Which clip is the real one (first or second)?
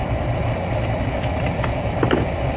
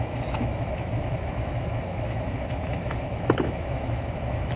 first